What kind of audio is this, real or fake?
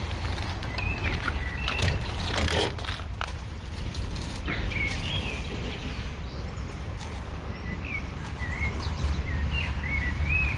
fake